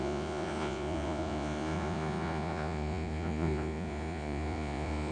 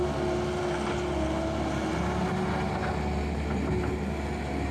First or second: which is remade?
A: first